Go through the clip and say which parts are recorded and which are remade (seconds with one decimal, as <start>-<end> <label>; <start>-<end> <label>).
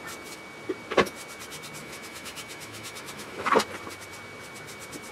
0.0-1.8 recorded; 1.8-3.5 remade; 3.5-5.1 recorded